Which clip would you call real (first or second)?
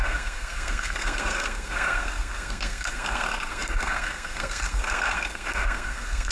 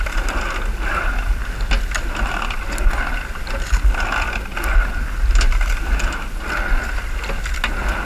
second